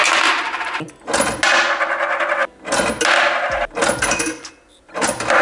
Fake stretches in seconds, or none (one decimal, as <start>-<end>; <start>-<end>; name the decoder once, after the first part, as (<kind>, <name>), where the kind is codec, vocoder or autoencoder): none